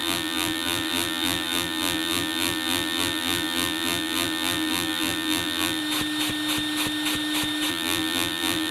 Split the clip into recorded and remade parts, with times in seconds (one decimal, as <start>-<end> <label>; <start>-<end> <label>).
0.0-5.8 remade; 5.8-7.7 recorded; 7.7-8.7 remade